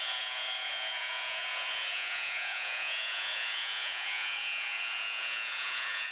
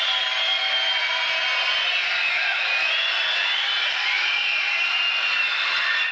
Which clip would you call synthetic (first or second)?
first